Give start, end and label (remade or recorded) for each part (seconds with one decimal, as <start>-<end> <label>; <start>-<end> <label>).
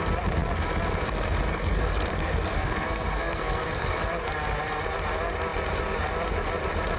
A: 0.0-1.5 recorded; 1.5-4.3 remade; 4.3-7.0 recorded